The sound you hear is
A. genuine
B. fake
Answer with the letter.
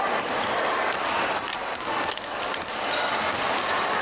A